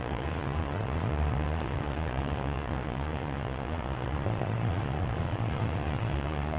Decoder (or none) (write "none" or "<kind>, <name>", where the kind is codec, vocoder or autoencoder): vocoder, Vocos